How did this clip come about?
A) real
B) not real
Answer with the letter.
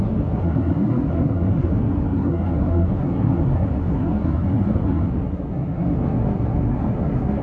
B